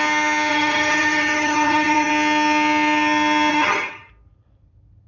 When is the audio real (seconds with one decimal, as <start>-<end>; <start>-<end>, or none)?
0.0-0.5; 2.1-3.5; 4.1-5.1